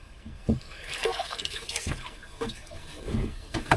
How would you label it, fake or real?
fake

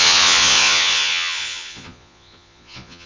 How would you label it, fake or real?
fake